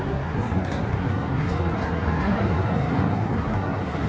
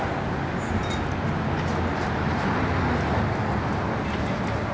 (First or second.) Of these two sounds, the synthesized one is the first